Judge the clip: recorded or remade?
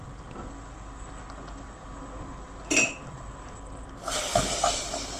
recorded